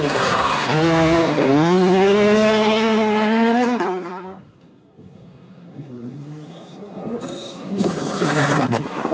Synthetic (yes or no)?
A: yes